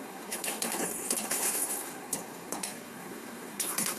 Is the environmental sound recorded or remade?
remade